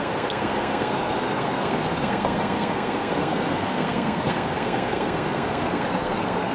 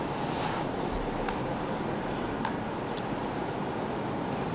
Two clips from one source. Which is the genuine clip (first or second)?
second